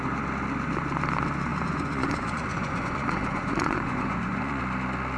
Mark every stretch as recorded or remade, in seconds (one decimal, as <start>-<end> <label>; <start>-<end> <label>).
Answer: 0.0-1.5 recorded; 1.5-4.6 remade; 4.6-5.2 recorded